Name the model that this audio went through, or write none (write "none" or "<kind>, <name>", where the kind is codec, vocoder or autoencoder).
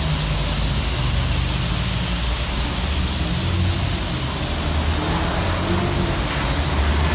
none